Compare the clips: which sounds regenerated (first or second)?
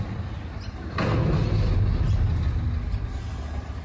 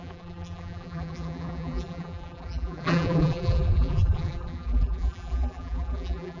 second